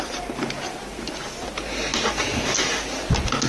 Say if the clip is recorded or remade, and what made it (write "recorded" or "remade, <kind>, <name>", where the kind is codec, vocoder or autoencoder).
recorded